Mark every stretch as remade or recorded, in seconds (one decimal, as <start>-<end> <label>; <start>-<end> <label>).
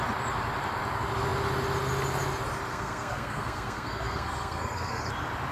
0.0-2.7 recorded; 2.7-5.0 remade; 5.0-5.5 recorded